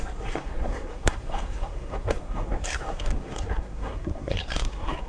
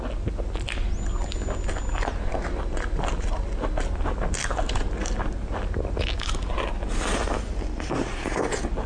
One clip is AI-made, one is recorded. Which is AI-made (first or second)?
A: first